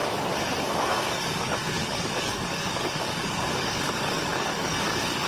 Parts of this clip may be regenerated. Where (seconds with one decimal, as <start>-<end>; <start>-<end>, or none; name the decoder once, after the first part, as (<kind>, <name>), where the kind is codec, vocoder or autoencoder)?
0.6-5.3 (codec, DAC)